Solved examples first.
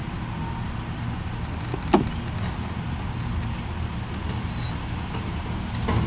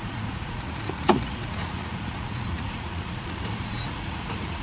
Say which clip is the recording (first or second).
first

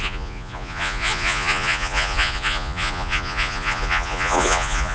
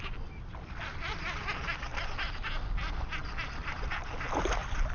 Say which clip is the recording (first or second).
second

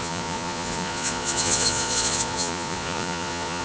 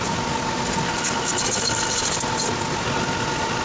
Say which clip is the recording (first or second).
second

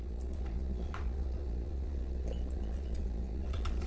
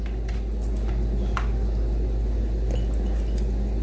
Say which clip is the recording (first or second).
second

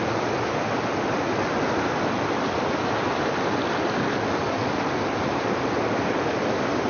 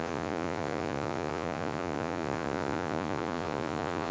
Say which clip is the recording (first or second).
first